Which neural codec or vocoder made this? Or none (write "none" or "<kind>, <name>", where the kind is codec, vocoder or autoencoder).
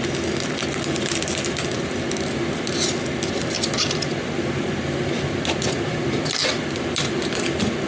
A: none